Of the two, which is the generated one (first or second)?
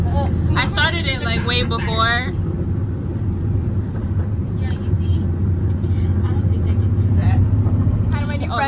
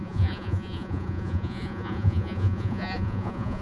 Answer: second